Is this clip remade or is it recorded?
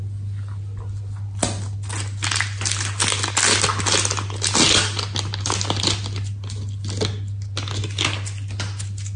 recorded